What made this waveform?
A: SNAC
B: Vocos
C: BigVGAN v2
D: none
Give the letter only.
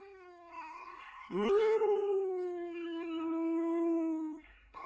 A